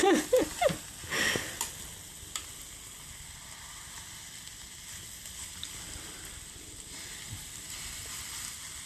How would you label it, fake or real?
real